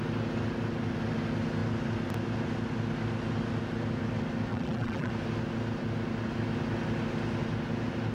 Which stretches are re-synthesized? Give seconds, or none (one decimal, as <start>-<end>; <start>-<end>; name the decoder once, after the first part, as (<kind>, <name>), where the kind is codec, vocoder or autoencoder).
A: 4.5-5.1 (vocoder, BigVGAN v2)